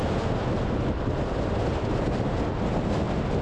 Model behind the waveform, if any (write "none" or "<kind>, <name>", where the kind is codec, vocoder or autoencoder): none